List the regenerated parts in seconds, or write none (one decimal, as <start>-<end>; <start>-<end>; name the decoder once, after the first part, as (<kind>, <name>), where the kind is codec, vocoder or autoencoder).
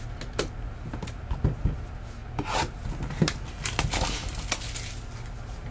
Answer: none